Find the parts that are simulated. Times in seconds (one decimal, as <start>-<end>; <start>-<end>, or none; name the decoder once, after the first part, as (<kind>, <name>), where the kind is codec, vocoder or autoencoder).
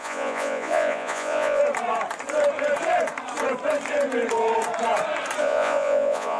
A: 0.0-1.6 (vocoder, Vocos); 5.4-6.4